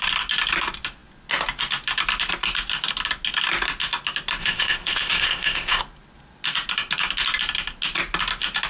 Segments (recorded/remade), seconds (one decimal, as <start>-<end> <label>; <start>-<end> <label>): 0.0-4.4 recorded; 4.4-5.8 remade; 5.8-8.7 recorded